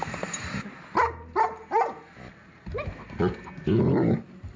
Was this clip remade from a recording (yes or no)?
no